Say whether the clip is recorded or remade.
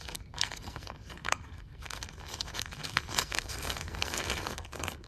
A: remade